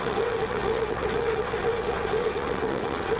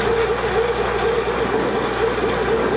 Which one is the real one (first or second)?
second